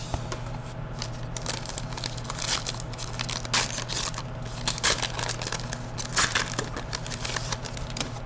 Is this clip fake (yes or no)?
no